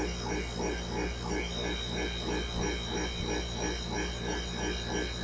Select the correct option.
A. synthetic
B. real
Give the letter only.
B